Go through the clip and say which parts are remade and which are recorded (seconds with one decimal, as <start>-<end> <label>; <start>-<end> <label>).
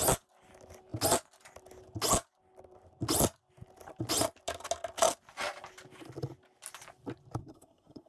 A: 0.0-7.4 recorded; 7.4-8.1 remade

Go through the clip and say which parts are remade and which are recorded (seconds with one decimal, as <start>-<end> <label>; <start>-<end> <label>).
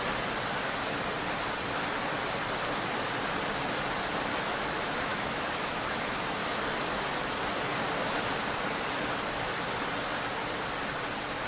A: 0.0-4.5 recorded; 4.5-6.2 remade; 6.2-11.5 recorded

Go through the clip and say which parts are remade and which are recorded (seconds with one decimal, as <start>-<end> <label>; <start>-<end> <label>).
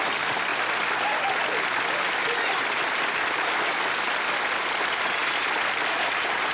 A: 0.0-6.5 recorded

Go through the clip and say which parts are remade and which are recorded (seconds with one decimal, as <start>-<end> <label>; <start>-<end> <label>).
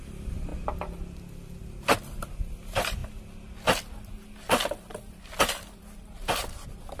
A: 0.0-7.0 recorded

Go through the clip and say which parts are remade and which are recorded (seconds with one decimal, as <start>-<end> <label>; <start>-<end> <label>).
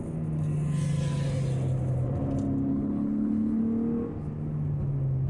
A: 0.0-2.7 recorded; 2.7-3.6 remade; 3.6-5.3 recorded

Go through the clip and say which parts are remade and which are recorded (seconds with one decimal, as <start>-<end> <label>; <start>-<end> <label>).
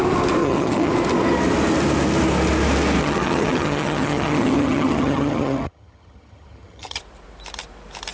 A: 0.0-0.4 recorded; 0.4-0.9 remade; 0.9-3.0 recorded; 3.0-7.0 remade; 7.0-8.1 recorded